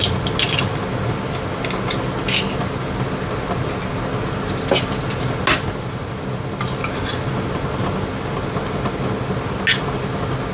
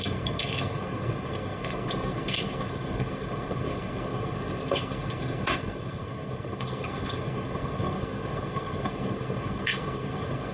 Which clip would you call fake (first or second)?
second